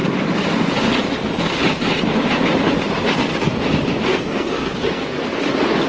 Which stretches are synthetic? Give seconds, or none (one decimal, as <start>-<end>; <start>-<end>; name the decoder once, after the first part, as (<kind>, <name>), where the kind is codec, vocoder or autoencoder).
4.1-5.4 (codec, SNAC)